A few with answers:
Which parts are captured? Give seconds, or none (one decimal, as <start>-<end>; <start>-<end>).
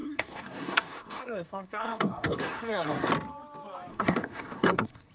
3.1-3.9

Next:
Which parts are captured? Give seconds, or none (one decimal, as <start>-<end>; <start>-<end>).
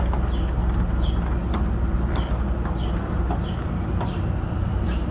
0.0-5.1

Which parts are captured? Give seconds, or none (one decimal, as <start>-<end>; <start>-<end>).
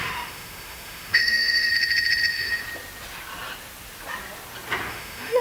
1.7-4.9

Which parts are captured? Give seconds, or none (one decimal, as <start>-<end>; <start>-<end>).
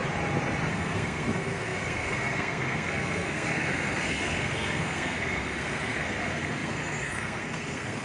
0.0-0.7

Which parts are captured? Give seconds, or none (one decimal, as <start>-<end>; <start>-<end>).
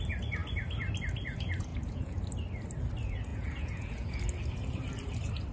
0.0-1.7; 2.2-3.3; 4.2-5.5